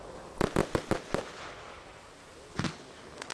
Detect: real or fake real